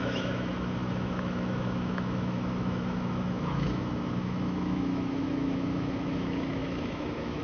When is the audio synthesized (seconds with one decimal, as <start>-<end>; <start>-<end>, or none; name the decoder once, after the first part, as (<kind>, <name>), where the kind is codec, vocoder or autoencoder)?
0.0-7.4 (autoencoder, DAC-VAE)